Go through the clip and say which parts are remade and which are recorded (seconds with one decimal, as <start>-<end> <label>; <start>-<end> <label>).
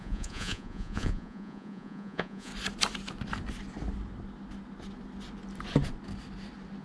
0.0-2.5 remade; 2.5-6.8 recorded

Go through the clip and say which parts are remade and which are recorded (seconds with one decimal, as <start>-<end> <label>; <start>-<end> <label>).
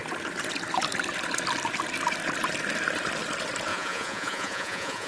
0.0-3.7 recorded; 3.7-5.1 remade